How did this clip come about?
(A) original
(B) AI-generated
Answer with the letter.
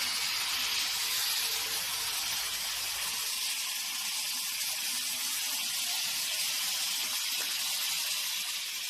A